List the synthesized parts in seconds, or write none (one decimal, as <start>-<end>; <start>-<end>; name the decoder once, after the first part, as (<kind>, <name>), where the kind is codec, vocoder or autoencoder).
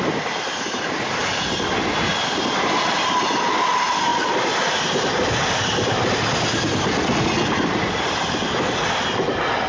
none